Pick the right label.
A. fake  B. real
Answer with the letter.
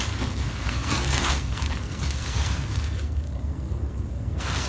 A